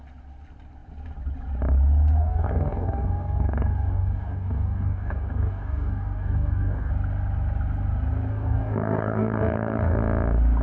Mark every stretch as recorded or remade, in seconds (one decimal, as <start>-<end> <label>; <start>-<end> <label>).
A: 0.0-2.2 recorded; 2.2-6.9 remade; 6.9-8.3 recorded; 8.3-10.0 remade; 10.0-10.6 recorded